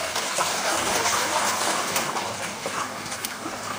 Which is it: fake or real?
fake